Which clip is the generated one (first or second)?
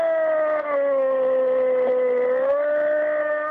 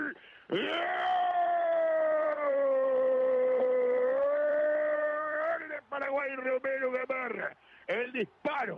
second